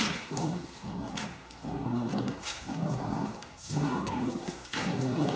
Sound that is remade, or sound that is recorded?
remade